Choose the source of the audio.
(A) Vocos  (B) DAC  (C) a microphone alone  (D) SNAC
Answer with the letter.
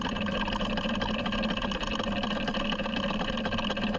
C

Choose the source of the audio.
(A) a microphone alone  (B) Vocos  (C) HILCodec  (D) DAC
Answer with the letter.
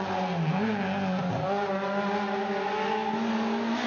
A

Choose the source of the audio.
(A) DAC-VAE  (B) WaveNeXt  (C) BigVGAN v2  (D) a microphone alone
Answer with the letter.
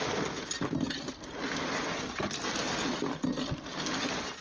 D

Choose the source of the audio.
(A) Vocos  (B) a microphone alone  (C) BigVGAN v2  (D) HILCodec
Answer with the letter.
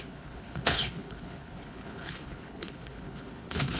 D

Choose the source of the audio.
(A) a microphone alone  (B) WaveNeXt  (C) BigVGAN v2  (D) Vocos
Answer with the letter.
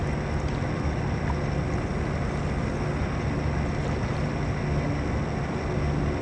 A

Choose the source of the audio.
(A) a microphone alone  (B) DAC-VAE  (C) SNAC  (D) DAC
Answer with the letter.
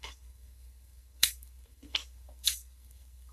C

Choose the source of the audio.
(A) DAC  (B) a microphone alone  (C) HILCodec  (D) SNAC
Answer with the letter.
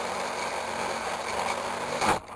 B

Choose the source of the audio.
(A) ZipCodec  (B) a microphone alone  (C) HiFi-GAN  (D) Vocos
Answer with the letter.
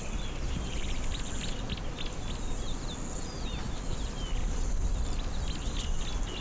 B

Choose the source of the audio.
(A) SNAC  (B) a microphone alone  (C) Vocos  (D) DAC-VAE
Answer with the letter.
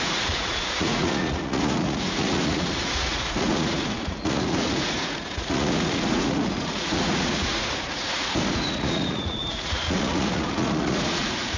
C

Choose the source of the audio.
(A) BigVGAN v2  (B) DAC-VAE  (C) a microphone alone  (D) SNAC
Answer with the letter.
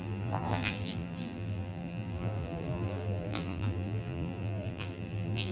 A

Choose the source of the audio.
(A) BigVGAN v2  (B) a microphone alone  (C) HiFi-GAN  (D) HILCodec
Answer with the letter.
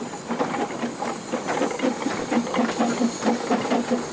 B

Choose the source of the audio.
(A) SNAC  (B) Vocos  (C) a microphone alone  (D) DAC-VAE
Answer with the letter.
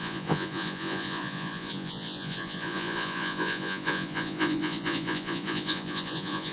B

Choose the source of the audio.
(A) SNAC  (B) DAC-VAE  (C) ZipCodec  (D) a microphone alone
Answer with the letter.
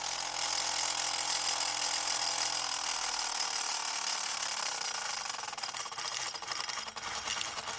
D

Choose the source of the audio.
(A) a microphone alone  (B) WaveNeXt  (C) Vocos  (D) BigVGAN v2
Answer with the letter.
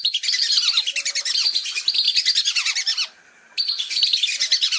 A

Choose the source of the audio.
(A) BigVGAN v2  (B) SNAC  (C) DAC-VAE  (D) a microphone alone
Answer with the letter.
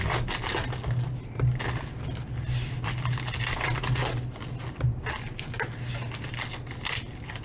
D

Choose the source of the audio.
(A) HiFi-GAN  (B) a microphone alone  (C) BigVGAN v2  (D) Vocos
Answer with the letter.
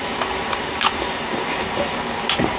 B